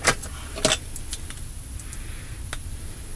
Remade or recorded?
recorded